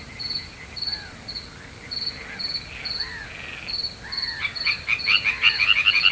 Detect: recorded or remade remade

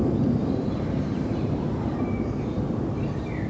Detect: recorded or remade remade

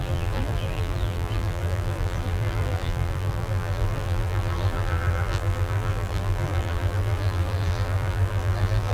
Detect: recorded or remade remade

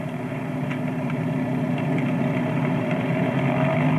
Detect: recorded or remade remade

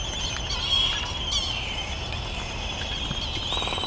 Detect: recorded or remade recorded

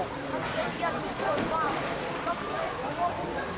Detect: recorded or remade remade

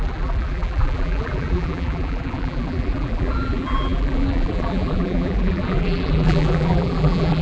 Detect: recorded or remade remade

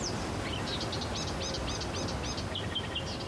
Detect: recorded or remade recorded